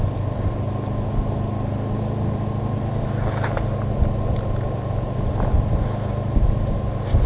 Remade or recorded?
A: recorded